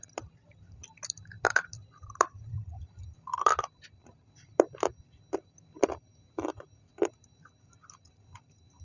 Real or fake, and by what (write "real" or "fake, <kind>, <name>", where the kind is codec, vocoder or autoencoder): fake, vocoder, BigVGAN v2